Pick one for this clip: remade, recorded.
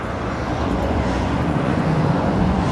remade